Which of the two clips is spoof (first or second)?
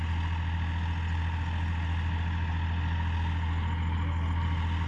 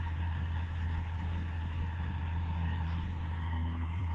second